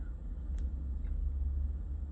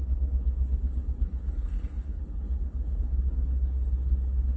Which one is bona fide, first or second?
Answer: first